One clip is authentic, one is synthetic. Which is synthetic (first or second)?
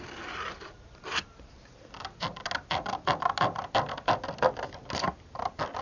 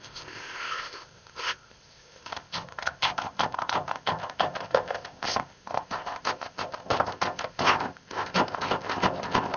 second